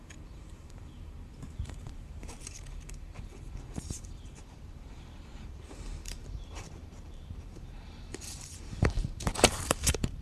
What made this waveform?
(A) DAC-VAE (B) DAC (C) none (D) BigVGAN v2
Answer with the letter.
D